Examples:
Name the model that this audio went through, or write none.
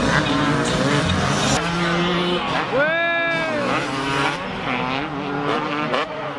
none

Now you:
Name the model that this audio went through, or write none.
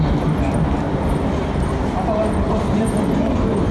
none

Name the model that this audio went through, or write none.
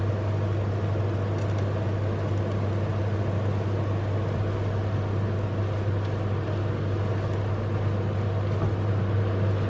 none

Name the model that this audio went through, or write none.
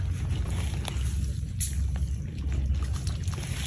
none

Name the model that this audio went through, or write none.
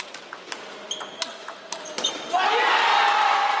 none